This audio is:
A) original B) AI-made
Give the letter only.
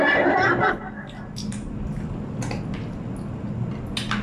A